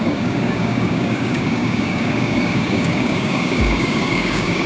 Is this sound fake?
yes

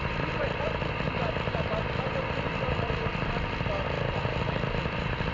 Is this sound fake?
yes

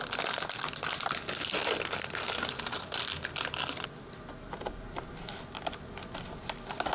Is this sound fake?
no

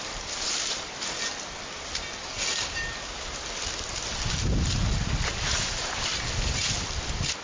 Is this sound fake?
no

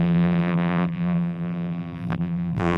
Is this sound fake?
yes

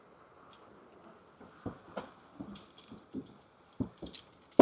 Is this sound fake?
no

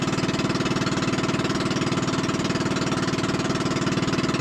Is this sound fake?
no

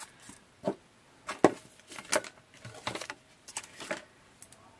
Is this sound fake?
no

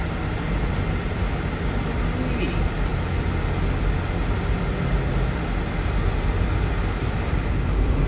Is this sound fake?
no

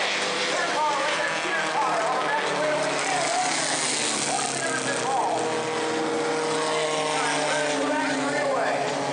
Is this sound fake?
no